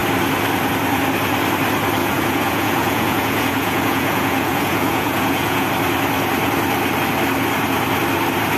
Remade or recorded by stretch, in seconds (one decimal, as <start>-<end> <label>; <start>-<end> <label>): 0.0-2.0 recorded; 2.0-5.7 remade; 5.7-8.6 recorded